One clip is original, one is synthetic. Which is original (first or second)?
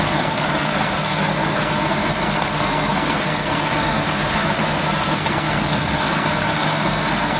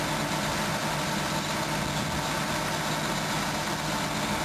second